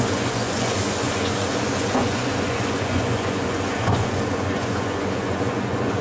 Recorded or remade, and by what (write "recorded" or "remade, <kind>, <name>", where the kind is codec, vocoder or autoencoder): remade, vocoder, Vocos